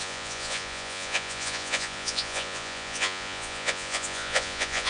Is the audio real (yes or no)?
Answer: no